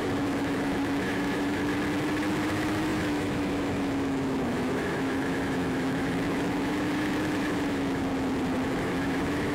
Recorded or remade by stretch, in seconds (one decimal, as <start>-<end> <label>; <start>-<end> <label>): 0.0-1.7 remade; 1.7-2.3 recorded; 2.3-8.1 remade; 8.1-8.7 recorded; 8.7-9.5 remade